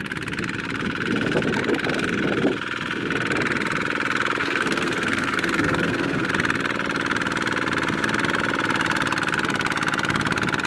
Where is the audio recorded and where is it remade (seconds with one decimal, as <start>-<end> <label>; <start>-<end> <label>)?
0.0-4.4 recorded; 4.4-6.3 remade; 6.3-10.7 recorded